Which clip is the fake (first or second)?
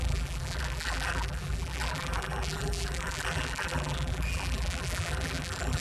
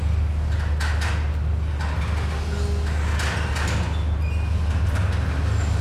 first